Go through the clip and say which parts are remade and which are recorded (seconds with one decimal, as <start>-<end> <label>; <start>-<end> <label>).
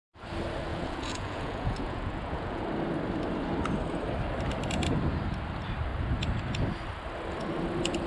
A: 0.0-0.7 recorded; 0.7-2.6 remade; 2.6-8.1 recorded